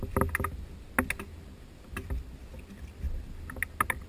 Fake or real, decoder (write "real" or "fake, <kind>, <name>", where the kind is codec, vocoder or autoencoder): real